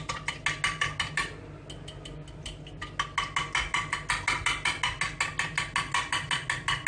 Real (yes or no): yes